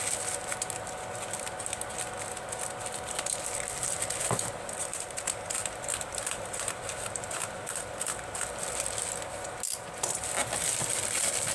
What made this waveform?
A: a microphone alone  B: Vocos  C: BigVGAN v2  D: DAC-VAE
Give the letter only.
A